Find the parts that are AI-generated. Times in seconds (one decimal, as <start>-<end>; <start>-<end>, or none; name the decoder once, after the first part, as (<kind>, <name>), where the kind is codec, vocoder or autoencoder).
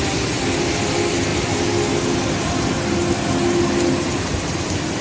none